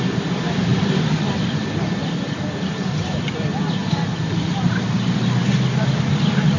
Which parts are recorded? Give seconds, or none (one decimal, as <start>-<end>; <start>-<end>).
0.0-6.6